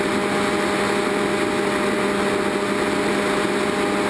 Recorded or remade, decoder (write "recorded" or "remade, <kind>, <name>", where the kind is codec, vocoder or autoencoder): recorded